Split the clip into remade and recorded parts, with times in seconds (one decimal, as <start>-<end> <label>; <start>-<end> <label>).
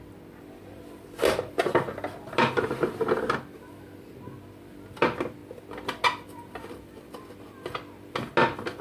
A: 0.0-8.8 recorded